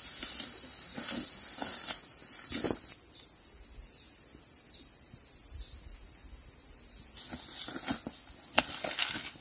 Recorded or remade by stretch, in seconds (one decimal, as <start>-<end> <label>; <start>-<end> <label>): 0.0-9.4 recorded